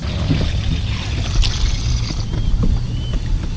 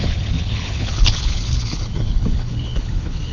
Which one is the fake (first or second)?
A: second